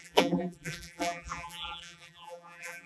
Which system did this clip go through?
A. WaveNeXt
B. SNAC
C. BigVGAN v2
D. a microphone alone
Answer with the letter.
C